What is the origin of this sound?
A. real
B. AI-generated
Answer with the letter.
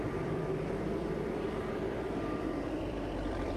B